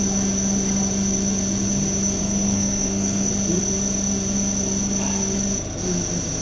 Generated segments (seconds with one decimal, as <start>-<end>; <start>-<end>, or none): 2.2-3.3